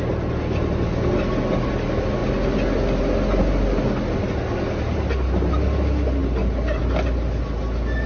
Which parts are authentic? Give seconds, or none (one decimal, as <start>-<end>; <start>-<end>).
0.0-8.1